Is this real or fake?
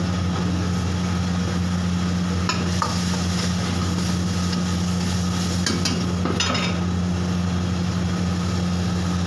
real